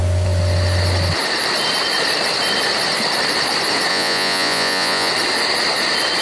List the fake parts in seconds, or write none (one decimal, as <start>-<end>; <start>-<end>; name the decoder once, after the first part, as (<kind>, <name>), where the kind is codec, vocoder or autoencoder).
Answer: 3.9-5.1 (vocoder, Vocos)